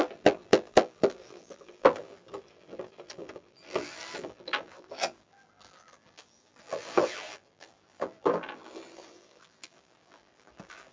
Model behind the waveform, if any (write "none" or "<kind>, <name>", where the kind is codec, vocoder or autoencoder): vocoder, BigVGAN v2